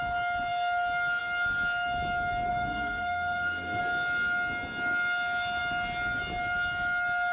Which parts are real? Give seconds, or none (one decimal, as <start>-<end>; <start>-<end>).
0.0-2.5; 3.8-7.3